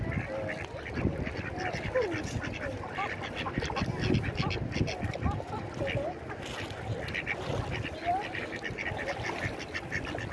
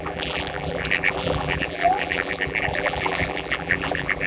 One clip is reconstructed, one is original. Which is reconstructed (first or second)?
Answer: second